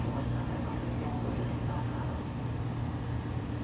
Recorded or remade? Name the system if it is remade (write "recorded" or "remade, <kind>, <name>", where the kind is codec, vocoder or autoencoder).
remade, vocoder, BigVGAN v2